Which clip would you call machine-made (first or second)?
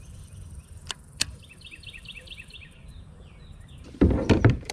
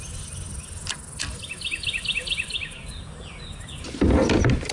first